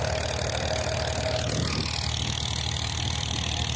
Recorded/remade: recorded